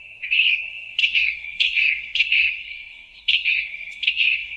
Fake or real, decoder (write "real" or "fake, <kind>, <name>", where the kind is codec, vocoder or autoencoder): fake, codec, SNAC